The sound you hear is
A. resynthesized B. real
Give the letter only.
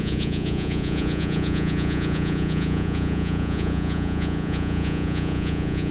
A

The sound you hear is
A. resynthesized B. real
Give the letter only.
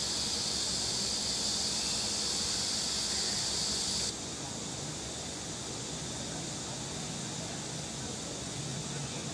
A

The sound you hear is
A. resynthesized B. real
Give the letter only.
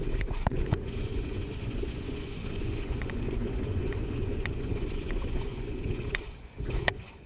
A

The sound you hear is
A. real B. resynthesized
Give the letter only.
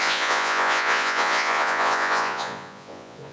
B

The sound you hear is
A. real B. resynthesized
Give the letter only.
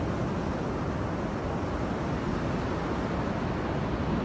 A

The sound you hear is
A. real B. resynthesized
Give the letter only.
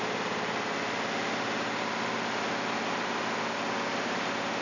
A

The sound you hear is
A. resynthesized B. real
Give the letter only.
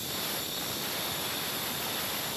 B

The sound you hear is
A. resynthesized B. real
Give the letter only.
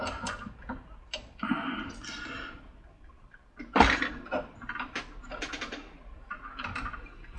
A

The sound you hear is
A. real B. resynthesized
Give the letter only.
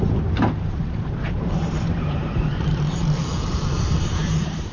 B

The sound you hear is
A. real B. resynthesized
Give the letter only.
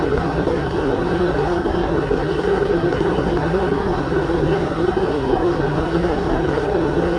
B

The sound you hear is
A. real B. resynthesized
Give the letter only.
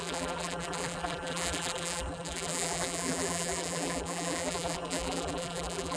B